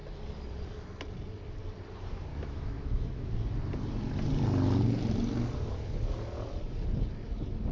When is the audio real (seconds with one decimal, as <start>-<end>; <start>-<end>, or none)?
0.0-2.3; 3.3-7.7